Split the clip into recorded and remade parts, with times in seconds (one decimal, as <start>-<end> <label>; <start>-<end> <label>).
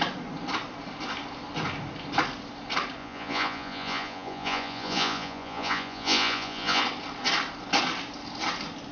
0.0-3.0 recorded; 3.0-6.8 remade; 6.8-8.9 recorded